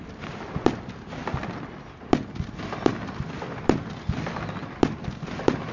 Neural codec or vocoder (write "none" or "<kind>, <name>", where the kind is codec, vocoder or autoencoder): none